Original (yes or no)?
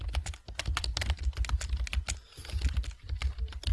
yes